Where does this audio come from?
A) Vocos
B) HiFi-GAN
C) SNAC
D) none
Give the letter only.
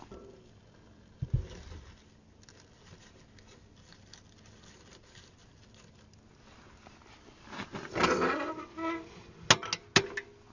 D